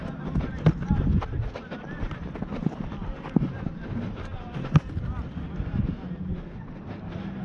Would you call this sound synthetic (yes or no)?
no